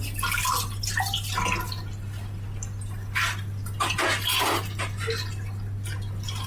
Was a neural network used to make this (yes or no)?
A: no